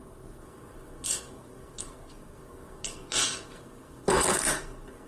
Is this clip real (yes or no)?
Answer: no